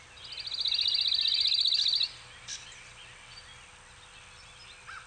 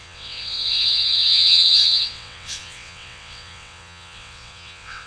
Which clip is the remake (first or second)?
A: second